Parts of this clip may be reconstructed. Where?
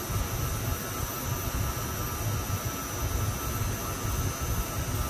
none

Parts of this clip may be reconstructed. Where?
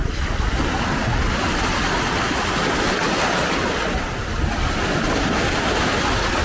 none